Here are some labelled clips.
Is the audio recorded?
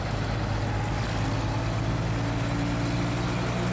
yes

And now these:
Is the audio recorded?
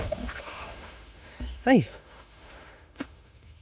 no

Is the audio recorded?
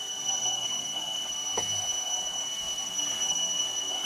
no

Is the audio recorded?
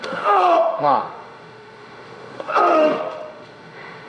no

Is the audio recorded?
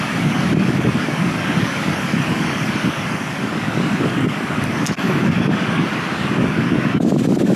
no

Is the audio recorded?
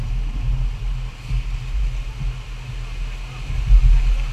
yes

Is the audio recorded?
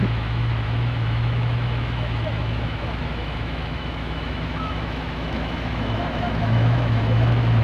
no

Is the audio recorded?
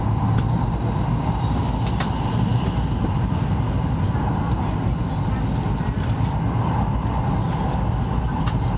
yes